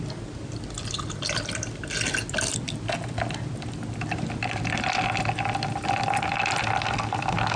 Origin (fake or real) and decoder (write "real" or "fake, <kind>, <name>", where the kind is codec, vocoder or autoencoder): real